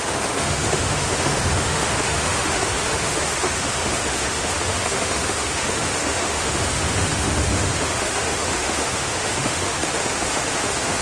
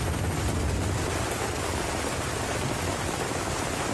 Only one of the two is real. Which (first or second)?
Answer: second